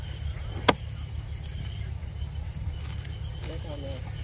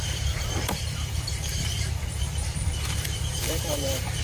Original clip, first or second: first